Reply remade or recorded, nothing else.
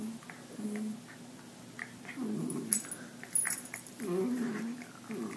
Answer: recorded